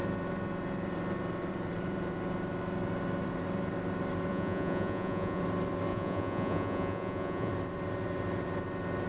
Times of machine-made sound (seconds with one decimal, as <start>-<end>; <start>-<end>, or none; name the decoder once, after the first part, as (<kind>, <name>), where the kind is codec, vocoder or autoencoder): 4.3-5.4 (vocoder, Vocos); 5.9-7.5